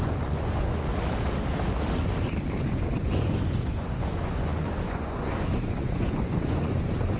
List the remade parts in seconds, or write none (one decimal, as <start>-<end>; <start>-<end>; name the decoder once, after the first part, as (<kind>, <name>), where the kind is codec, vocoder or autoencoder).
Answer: 0.0-0.9 (vocoder, Vocos); 2.6-7.2